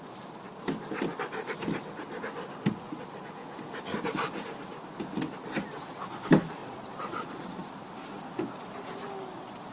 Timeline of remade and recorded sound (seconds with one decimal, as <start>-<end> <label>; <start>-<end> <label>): 0.0-6.6 recorded; 6.6-7.7 remade; 7.7-9.7 recorded

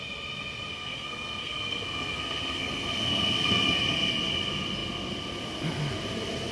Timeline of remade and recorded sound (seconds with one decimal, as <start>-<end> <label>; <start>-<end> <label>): 0.0-0.7 recorded; 0.7-3.8 remade; 3.8-6.5 recorded

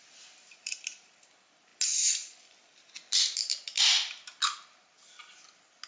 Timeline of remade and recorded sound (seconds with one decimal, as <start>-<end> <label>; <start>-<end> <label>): 0.0-5.9 recorded

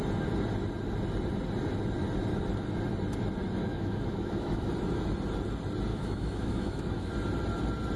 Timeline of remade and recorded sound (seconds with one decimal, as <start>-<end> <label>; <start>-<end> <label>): 0.0-3.6 recorded; 3.6-4.7 remade; 4.7-5.9 recorded; 5.9-7.1 remade; 7.1-8.0 recorded

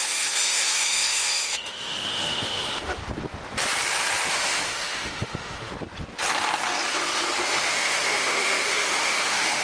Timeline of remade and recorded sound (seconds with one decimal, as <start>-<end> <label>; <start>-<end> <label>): 0.0-3.0 remade; 3.0-4.3 recorded; 4.3-5.7 remade; 5.7-7.7 recorded; 7.7-9.6 remade

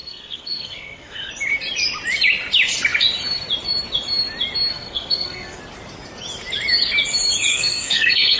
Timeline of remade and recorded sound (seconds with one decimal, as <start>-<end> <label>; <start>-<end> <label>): 0.0-1.3 remade; 1.3-4.7 recorded; 4.7-5.6 remade; 5.6-7.5 recorded; 7.5-8.4 remade